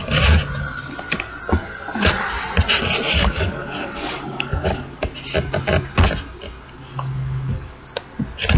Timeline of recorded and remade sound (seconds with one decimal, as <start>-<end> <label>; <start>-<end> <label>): 0.0-3.2 recorded; 3.2-5.1 remade; 5.1-6.8 recorded; 6.8-7.8 remade; 7.8-8.6 recorded